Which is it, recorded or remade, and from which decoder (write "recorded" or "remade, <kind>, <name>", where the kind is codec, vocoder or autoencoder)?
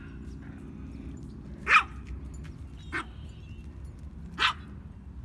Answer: recorded